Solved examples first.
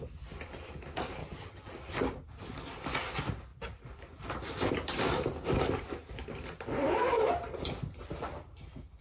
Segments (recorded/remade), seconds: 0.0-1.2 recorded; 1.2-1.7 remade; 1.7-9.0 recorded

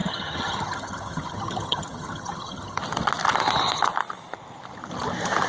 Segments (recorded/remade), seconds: 0.0-2.8 remade; 2.8-5.5 recorded

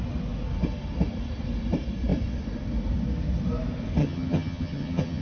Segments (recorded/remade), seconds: 0.0-4.0 recorded; 4.0-5.2 remade

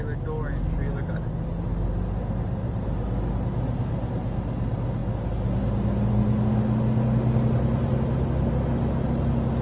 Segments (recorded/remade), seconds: 0.0-9.6 recorded

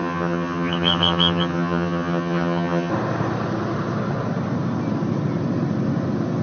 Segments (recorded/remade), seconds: 0.0-2.9 remade; 2.9-6.4 recorded

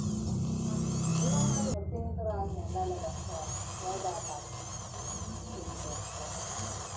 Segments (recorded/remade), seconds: 0.0-7.0 recorded

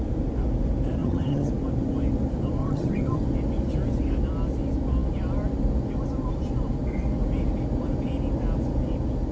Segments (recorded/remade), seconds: 0.0-1.0 recorded; 1.0-1.5 remade; 1.5-2.6 recorded; 2.6-3.2 remade; 3.2-9.3 recorded